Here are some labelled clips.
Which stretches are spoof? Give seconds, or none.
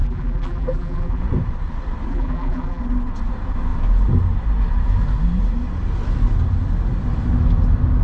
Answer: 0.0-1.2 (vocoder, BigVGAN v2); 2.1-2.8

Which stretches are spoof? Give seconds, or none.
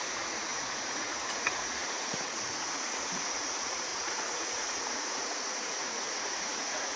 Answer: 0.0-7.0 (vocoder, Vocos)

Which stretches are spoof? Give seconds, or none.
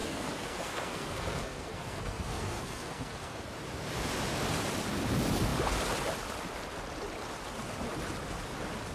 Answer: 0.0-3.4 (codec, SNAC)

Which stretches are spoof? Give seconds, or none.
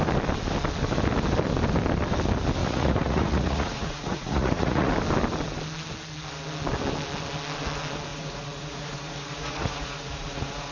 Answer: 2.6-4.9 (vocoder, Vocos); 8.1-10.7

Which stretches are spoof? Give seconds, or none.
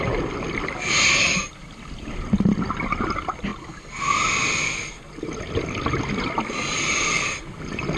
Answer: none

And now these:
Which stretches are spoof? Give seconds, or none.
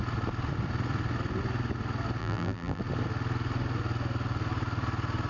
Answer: 2.2-2.8 (vocoder, BigVGAN v2)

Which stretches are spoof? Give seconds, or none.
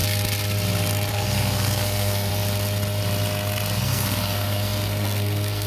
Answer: 1.1-2.3 (codec, SNAC); 3.8-5.7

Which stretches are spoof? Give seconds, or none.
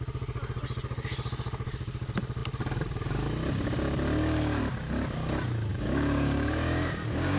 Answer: 5.7-7.4 (codec, DAC)